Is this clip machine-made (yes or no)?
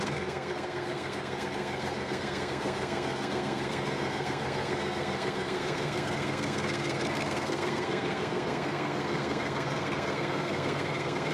yes